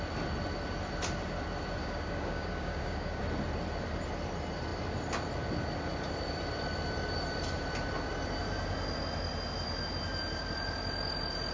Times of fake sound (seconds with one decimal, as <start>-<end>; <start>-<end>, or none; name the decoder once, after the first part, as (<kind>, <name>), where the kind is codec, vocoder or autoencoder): 1.8-3.2 (codec, DAC)